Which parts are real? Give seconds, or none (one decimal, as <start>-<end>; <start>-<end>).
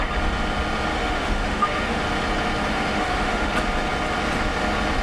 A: 0.0-0.9; 2.0-2.7; 3.5-5.0